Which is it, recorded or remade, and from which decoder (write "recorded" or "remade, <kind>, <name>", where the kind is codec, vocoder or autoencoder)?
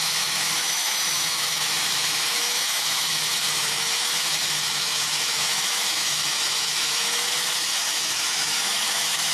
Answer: remade, autoencoder, DAC-VAE